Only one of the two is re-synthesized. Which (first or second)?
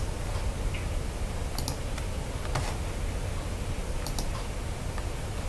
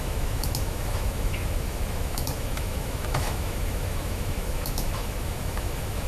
second